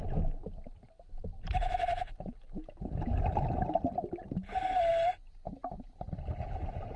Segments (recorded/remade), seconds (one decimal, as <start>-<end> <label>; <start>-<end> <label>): 0.0-7.0 recorded